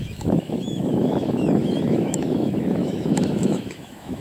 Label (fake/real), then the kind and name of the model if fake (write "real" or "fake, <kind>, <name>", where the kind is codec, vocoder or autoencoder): fake, autoencoder, DAC-VAE